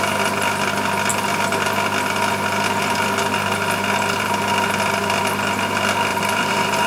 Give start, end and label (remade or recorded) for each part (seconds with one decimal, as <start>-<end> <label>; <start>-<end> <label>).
0.0-6.1 recorded; 6.1-6.9 remade